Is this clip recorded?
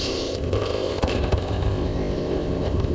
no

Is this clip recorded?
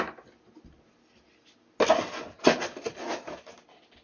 yes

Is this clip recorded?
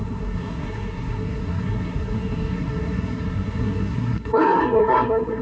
no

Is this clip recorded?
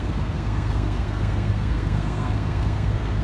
no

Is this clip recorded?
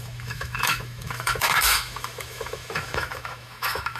no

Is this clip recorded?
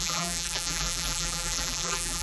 no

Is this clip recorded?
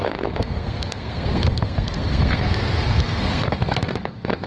no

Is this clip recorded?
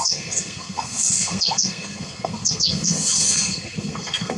no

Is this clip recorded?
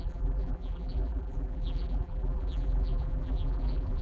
no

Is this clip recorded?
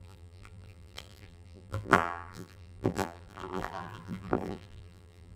no